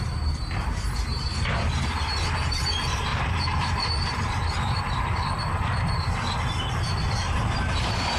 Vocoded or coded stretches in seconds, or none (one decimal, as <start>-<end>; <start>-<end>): 3.1-5.4

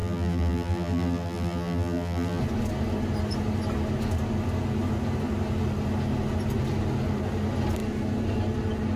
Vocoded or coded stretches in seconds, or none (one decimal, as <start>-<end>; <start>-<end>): 0.0-2.4

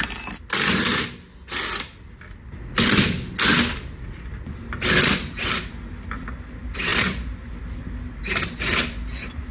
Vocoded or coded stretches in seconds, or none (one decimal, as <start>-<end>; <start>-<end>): 6.9-7.5

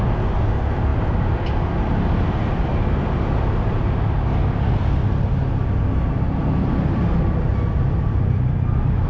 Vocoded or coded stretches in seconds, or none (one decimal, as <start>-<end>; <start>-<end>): none

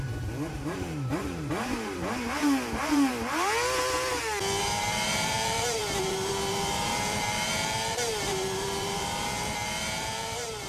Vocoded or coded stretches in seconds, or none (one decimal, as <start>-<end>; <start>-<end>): 0.0-3.1; 4.6-10.7

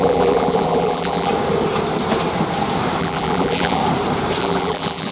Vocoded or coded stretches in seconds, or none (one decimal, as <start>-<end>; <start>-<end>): 0.0-1.3; 3.0-3.8; 4.4-5.1